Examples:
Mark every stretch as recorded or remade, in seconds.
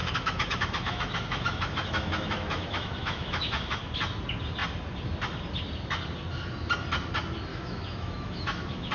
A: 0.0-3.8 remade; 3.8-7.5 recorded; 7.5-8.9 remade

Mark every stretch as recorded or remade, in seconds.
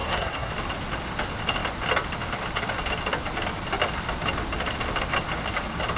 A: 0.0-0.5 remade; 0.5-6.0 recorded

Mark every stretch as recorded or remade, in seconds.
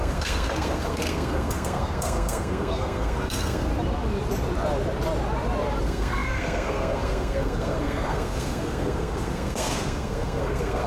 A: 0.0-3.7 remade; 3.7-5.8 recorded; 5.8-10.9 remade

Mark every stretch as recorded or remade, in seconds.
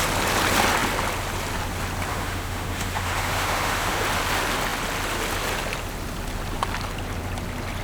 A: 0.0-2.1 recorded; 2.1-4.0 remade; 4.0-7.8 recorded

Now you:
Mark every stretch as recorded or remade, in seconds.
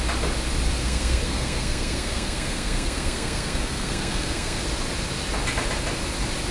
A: 0.0-0.8 recorded; 0.8-4.7 remade; 4.7-6.5 recorded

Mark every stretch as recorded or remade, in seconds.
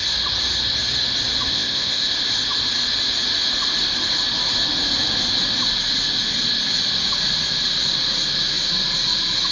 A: 0.0-1.5 recorded; 1.5-2.1 remade; 2.1-9.5 recorded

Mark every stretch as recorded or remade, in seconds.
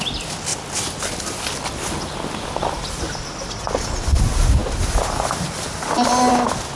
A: 0.0-6.8 recorded